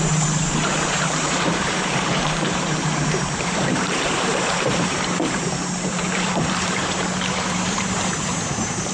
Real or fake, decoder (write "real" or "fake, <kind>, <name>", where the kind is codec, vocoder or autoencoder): fake, vocoder, BigVGAN v2